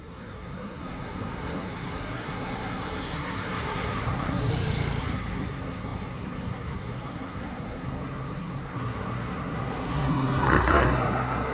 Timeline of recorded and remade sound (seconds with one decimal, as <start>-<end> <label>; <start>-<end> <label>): 0.0-4.5 remade; 4.5-5.0 recorded; 5.0-11.5 remade